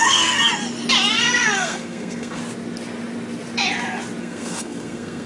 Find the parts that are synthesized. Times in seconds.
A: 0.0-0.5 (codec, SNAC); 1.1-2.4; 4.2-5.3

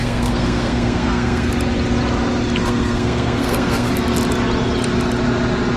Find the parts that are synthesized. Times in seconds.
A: 0.0-1.5 (codec, SNAC); 2.6-3.9

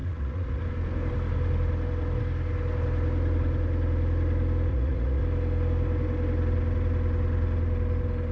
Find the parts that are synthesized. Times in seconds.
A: 0.0-0.6 (vocoder, Vocos); 4.7-5.2

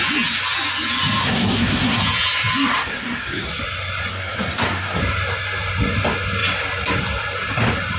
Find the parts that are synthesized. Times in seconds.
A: 1.2-2.0 (codec, SNAC); 2.7-3.5; 4.1-5.0

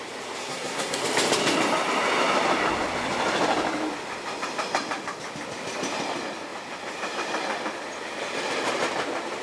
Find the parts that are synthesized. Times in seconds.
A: 0.4-1.0 (codec, SNAC)

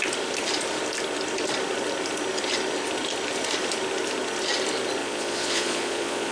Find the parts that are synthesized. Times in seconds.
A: 5.0-6.3 (vocoder, Vocos)

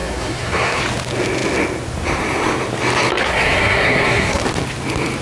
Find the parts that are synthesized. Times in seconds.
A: 0.0-0.8 (codec, SNAC); 3.2-4.4